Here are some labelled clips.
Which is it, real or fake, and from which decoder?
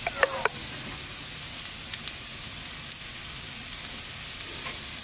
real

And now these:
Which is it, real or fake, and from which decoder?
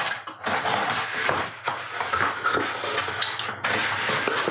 real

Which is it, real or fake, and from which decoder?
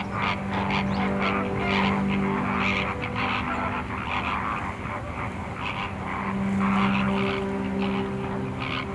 real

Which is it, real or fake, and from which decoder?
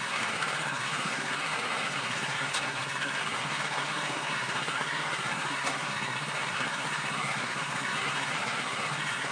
fake, codec, SNAC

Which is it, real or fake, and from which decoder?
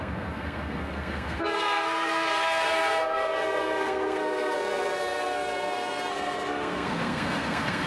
fake, codec, SNAC